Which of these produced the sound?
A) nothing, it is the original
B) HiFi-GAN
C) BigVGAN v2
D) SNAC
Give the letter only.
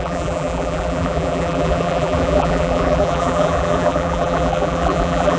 C